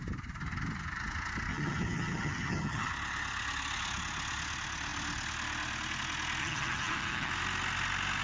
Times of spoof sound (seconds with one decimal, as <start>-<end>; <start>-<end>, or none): 1.5-2.9; 6.4-7.3